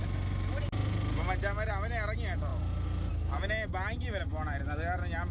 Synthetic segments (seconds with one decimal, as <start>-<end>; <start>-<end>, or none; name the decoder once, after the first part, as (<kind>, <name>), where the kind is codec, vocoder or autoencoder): none